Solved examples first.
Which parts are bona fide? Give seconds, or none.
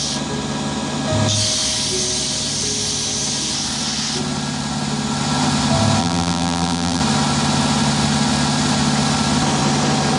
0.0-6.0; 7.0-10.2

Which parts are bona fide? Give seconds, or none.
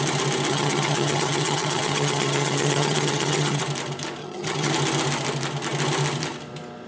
0.0-0.5; 3.6-4.2; 4.7-6.9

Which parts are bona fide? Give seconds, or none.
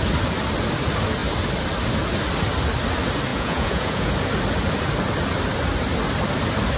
0.0-3.3; 4.1-6.8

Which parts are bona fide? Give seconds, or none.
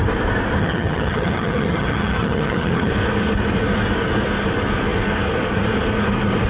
0.0-0.6; 2.9-6.5